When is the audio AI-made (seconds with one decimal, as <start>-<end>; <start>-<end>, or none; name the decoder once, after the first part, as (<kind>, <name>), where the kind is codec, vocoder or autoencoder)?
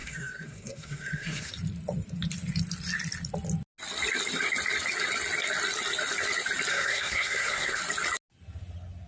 0.0-1.5 (codec, SNAC); 6.7-7.8